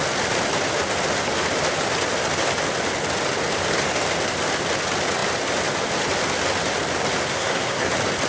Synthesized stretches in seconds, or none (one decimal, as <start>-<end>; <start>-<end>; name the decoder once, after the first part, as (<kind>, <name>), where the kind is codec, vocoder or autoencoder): 7.3-7.9 (codec, SNAC)